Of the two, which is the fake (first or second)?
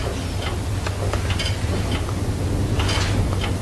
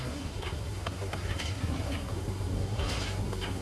second